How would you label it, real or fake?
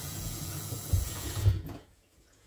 fake